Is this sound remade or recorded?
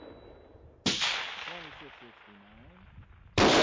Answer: recorded